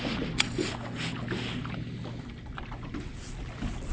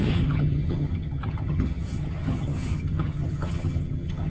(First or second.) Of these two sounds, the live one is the first